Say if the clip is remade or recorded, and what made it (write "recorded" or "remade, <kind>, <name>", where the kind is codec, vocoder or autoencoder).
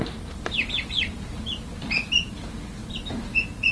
recorded